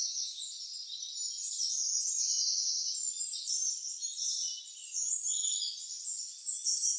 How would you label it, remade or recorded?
recorded